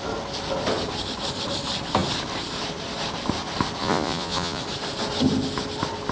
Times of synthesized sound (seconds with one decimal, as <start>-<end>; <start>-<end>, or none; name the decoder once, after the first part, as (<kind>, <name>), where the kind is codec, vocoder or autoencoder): 3.8-4.6 (vocoder, Vocos)